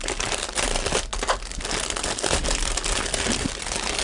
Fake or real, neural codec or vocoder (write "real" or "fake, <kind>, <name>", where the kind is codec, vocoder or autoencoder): real